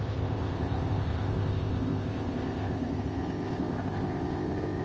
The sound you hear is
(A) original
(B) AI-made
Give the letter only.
B